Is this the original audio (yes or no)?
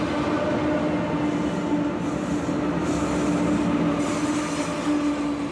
yes